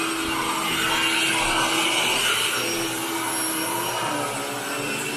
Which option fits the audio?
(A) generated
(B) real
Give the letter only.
B